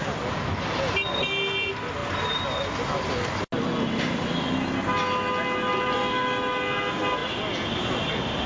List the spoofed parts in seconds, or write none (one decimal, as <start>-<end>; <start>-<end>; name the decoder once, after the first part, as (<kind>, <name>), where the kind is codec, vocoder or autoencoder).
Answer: none

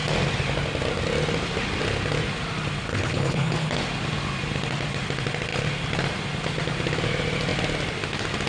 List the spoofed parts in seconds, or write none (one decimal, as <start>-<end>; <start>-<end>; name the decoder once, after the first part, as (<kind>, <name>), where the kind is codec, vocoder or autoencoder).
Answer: 2.9-3.7 (codec, HILCodec)

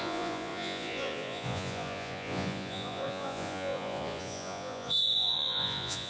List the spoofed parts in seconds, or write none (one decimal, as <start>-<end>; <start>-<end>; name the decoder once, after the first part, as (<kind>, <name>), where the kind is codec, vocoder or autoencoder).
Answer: 0.0-6.1 (vocoder, Vocos)